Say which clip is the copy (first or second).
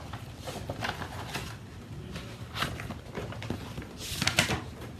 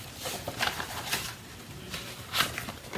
second